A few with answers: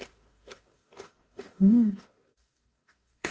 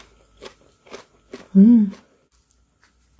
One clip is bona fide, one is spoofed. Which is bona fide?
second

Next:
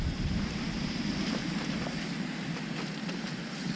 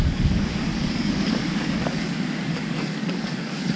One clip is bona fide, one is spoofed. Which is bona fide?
first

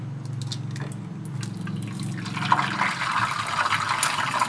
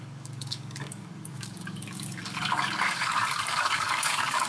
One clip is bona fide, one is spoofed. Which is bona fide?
first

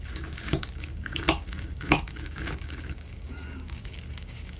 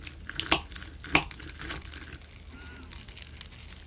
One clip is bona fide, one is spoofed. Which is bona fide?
second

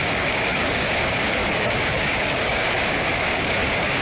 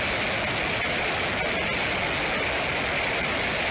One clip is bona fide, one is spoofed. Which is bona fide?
second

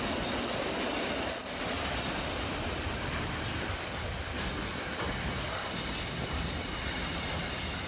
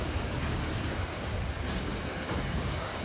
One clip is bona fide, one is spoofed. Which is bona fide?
first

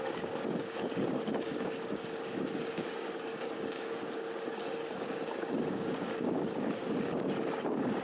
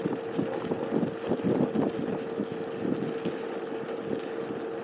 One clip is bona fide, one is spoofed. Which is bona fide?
second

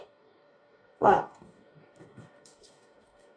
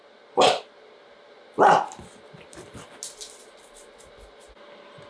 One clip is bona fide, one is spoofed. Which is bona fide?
second